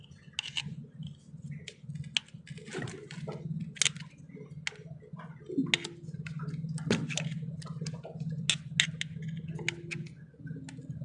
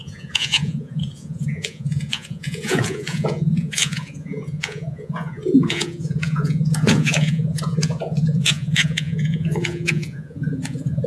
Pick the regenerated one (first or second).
second